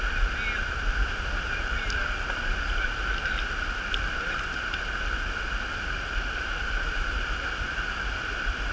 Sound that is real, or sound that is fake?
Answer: real